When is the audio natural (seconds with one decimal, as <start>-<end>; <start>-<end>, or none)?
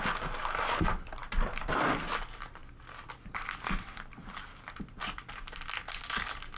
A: 0.0-1.2; 1.9-4.2; 5.0-6.6